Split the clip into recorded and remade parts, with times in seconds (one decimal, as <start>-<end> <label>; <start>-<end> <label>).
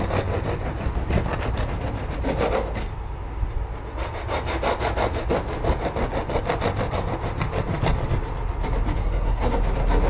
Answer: 0.0-9.0 recorded; 9.0-9.5 remade; 9.5-10.1 recorded